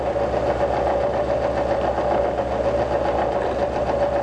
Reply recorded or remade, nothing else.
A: recorded